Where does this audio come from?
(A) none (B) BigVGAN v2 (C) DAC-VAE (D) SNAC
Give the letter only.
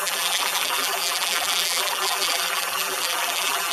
B